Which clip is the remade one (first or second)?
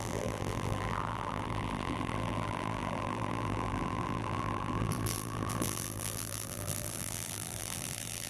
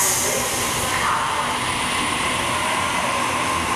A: first